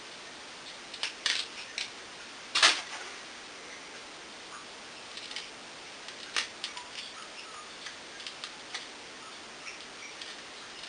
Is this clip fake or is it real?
real